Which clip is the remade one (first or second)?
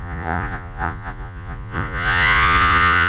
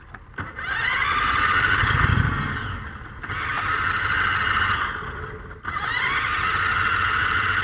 first